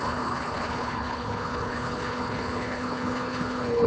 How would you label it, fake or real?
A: fake